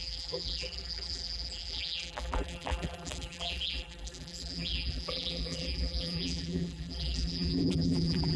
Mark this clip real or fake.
fake